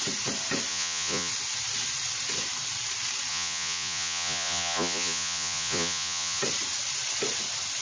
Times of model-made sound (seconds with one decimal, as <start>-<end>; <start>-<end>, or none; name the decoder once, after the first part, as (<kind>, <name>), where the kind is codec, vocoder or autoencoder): 0.7-1.3 (vocoder, Vocos); 3.3-6.4